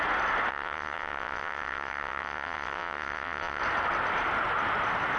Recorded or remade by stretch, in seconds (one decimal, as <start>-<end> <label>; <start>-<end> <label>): 0.0-0.5 recorded; 0.5-3.6 remade; 3.6-5.2 recorded